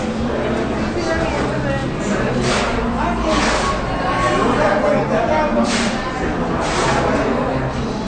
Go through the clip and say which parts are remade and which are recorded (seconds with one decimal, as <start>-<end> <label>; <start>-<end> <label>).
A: 0.0-8.1 recorded